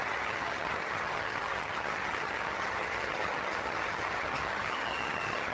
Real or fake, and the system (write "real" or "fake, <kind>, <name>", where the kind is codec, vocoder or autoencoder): fake, vocoder, HiFi-GAN